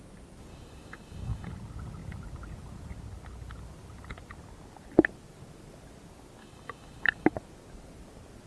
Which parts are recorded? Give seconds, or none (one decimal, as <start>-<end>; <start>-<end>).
0.0-0.5; 1.5-6.4; 7.3-8.5